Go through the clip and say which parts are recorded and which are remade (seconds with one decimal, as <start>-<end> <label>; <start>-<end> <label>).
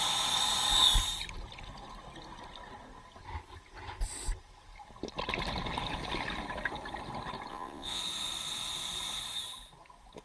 0.0-7.5 recorded; 7.5-8.0 remade; 8.0-10.2 recorded